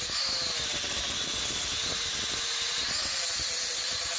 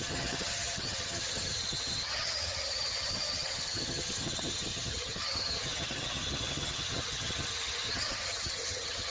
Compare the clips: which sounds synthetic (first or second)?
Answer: second